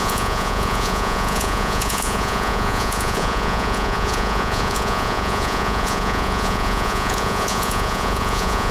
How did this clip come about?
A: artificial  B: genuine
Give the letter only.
A